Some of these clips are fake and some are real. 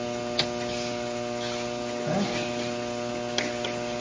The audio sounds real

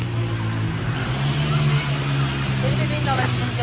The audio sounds real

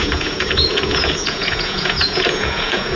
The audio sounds fake